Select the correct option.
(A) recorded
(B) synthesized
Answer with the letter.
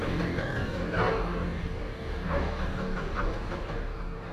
B